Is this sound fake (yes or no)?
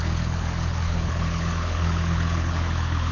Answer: yes